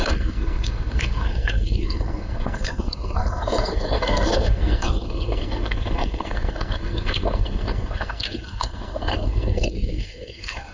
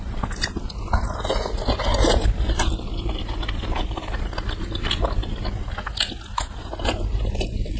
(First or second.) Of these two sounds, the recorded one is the second